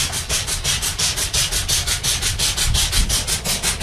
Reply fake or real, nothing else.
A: fake